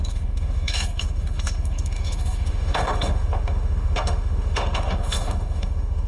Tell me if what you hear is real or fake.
fake